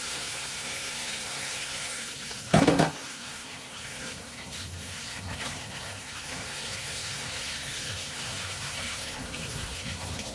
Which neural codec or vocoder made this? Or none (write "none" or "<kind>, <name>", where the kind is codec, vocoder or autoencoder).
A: codec, SNAC